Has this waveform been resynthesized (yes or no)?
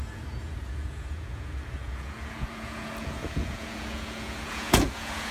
yes